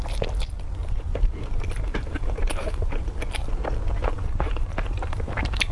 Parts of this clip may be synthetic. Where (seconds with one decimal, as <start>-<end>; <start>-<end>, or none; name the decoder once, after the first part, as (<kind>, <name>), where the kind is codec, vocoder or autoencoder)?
0.8-3.2 (vocoder, BigVGAN v2); 4.0-5.7